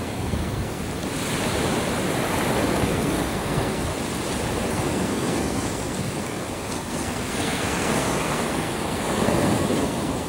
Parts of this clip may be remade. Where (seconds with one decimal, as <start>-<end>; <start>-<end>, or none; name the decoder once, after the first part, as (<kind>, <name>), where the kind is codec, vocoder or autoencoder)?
0.0-0.8 (codec, SNAC); 2.7-3.9; 4.7-10.3